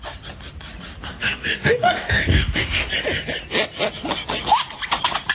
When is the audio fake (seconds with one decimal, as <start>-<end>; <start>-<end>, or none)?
1.1-2.9